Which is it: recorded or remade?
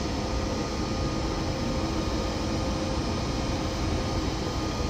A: recorded